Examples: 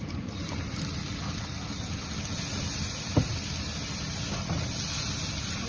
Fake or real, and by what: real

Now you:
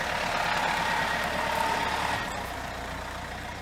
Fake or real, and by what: real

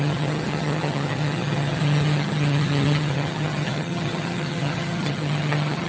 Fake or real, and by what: fake, vocoder, HiFi-GAN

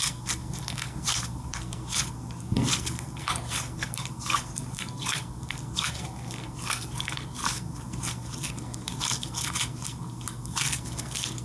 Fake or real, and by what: fake, codec, SNAC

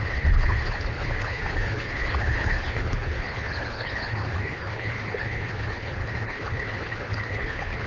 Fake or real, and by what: fake, codec, HILCodec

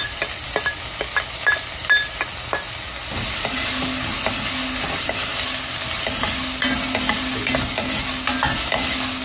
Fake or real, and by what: real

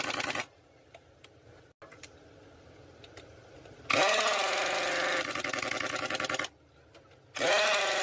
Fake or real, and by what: real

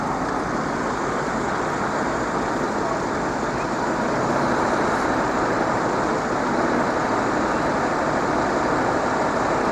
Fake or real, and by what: real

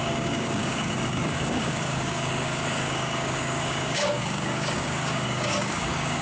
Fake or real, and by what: fake, codec, DAC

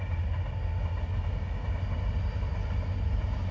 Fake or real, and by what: real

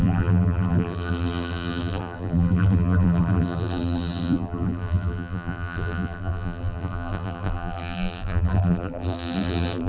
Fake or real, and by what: fake, vocoder, BigVGAN v2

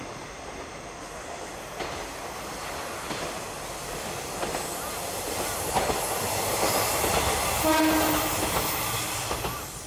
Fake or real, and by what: real